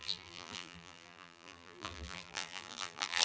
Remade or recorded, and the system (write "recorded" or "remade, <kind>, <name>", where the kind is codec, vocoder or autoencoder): remade, vocoder, BigVGAN v2